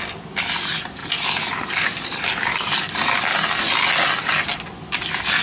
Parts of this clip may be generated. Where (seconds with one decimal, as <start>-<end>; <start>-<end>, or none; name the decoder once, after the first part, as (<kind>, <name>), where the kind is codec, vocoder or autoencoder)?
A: none